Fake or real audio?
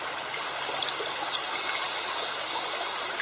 real